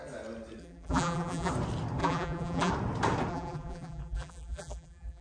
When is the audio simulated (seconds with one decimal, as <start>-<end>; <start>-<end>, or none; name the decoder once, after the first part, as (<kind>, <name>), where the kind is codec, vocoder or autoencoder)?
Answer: 0.6-1.5 (vocoder, BigVGAN v2); 2.0-2.7; 3.3-5.2